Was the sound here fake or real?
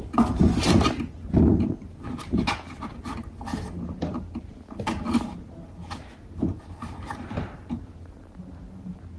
real